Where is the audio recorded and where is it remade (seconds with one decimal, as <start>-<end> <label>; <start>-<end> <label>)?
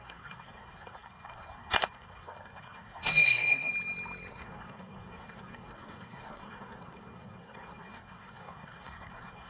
0.0-3.7 remade; 3.7-4.3 recorded; 4.3-9.5 remade